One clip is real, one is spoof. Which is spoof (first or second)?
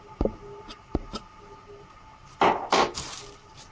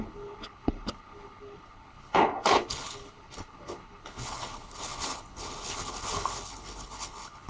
second